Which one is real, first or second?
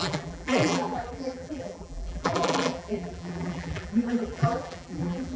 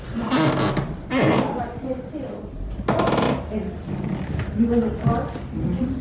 second